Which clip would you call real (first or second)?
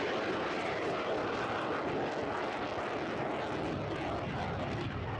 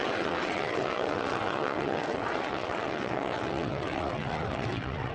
first